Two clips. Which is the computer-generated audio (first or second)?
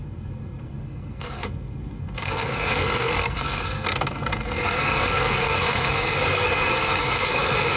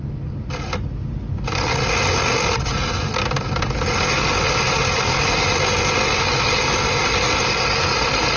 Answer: first